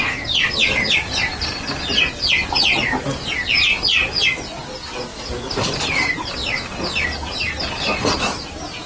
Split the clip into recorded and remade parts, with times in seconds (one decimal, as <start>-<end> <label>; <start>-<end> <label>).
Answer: 0.0-5.1 recorded; 5.1-5.7 remade; 5.7-8.9 recorded